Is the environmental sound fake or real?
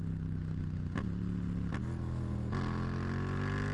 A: real